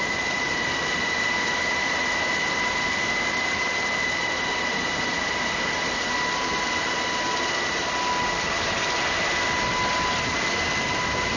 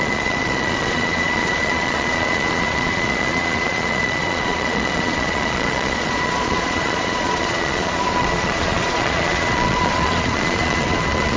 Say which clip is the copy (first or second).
second